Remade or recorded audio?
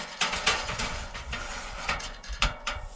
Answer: remade